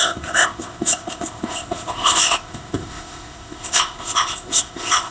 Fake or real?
fake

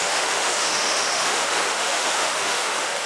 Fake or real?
fake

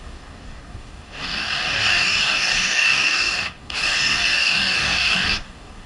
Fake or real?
fake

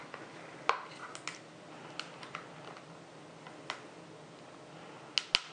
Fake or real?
real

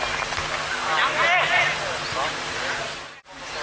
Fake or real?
real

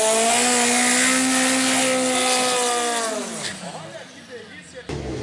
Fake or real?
real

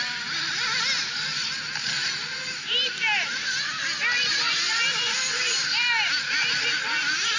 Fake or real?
real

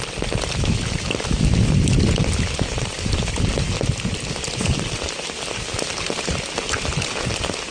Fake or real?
real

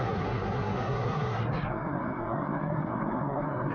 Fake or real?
fake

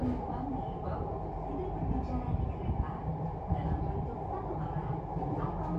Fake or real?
real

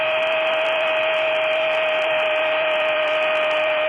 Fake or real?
fake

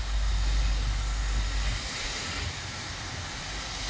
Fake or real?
real